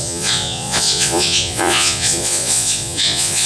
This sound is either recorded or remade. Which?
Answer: remade